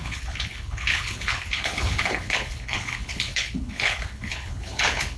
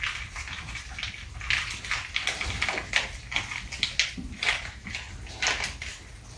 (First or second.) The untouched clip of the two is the second